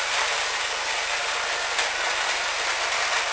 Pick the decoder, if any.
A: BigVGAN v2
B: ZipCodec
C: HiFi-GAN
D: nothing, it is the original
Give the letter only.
D